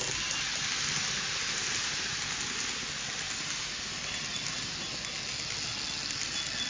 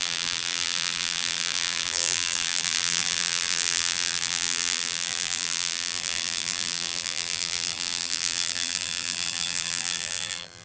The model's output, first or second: second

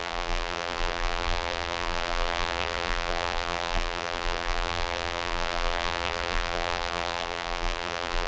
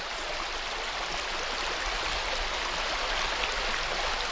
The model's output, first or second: first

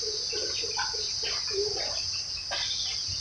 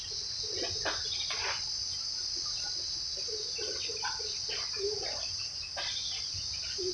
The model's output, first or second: second